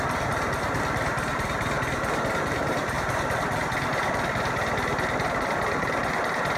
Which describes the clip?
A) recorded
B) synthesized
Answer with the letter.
A